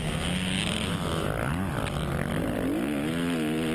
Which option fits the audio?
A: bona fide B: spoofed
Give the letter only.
A